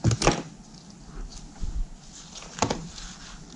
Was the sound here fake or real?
real